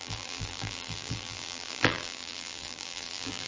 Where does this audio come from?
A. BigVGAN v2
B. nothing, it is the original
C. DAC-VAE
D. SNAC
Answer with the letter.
A